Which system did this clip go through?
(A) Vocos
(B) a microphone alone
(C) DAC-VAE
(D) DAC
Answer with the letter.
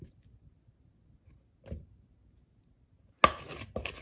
B